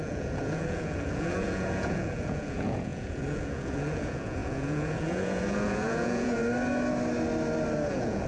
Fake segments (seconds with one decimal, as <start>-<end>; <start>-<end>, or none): 0.0-6.4; 7.9-8.3